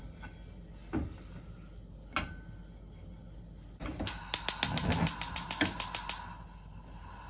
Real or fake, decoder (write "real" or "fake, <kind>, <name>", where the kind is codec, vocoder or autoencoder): real